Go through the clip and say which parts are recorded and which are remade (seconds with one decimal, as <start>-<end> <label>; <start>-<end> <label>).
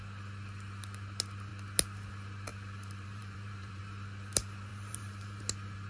0.0-2.5 recorded; 2.5-3.8 remade; 3.8-4.7 recorded; 4.7-5.4 remade; 5.4-5.9 recorded